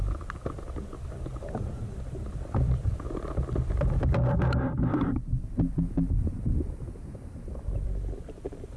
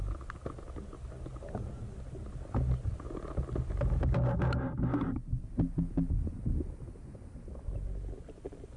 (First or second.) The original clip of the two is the second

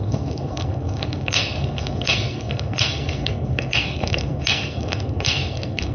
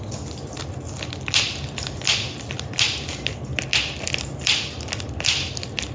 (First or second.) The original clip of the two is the second